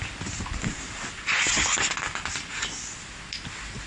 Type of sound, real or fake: real